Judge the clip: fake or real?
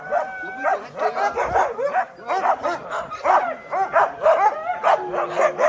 real